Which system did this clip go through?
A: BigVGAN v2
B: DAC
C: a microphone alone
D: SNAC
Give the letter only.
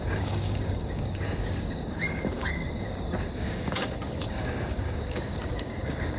B